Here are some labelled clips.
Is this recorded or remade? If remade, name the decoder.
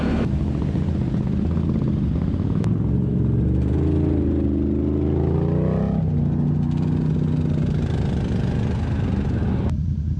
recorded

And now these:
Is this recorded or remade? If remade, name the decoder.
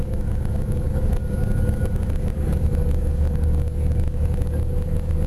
remade, codec, DAC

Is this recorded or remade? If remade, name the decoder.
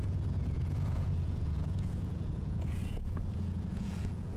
remade, vocoder, Vocos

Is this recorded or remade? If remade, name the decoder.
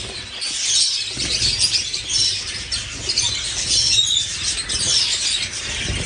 recorded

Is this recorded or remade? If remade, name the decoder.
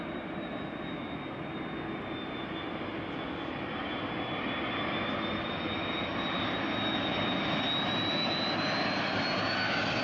recorded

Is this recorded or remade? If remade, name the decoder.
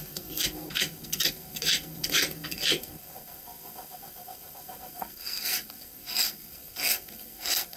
remade, codec, SNAC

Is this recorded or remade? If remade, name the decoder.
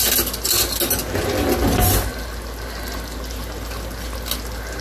recorded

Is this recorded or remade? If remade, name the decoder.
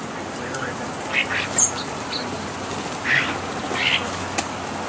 recorded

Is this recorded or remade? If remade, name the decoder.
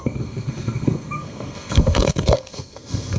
remade, codec, SNAC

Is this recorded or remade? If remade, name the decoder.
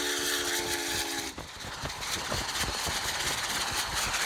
recorded